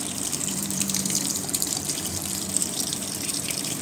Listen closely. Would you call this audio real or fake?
fake